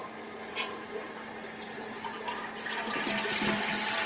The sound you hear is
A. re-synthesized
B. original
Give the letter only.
B